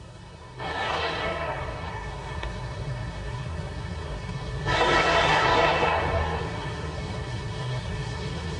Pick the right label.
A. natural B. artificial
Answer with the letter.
B